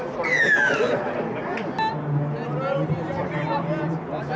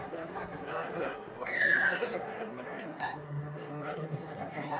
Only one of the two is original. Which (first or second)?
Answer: first